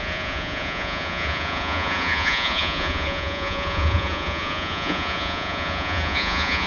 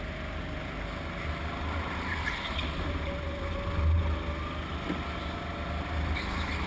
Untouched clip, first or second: second